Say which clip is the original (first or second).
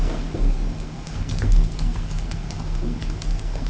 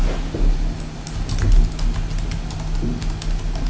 second